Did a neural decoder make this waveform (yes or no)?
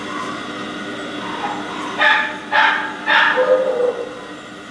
no